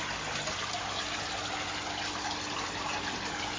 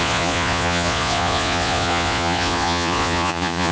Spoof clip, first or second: second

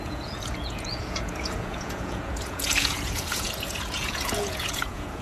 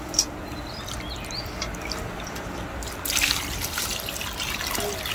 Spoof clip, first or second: first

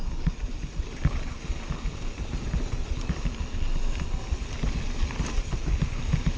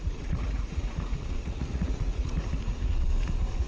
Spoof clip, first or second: second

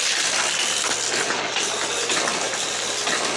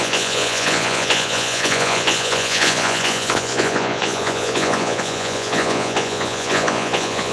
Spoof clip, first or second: second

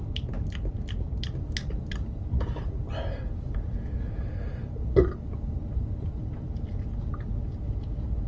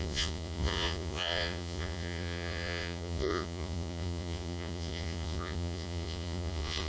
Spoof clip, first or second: second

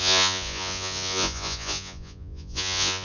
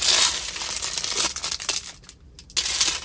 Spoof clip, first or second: first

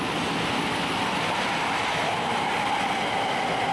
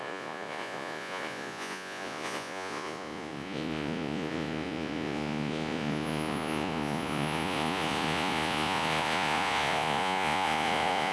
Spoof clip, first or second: second